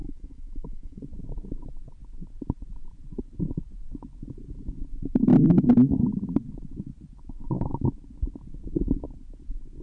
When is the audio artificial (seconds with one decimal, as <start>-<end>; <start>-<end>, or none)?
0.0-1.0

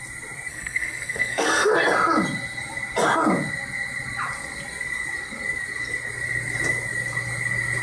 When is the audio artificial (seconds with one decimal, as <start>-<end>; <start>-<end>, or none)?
0.5-1.7

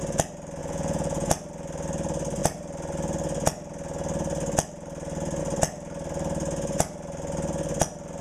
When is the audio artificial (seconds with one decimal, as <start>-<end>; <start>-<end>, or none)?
0.6-1.3

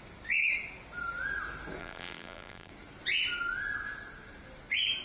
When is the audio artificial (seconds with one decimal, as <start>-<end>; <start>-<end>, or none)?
1.8-2.7

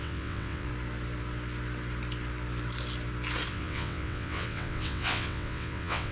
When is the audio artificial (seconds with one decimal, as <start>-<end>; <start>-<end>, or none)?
0.0-0.7; 3.5-6.1

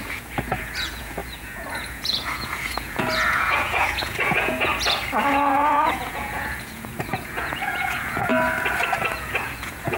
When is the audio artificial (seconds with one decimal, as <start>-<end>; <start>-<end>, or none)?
0.0-4.7; 5.3-8.3; 9.0-10.0

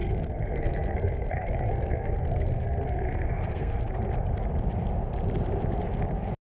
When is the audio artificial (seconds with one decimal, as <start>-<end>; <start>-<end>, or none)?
0.0-3.8

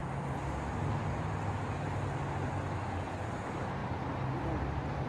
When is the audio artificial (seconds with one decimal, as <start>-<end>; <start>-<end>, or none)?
none